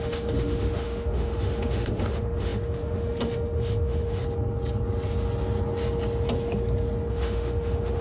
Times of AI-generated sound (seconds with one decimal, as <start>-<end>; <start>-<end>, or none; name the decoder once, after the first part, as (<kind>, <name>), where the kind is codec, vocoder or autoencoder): 0.0-4.2 (autoencoder, DAC-VAE); 7.1-8.0